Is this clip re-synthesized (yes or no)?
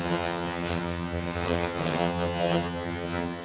yes